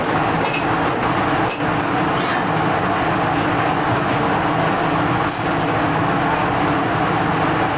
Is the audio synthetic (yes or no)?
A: no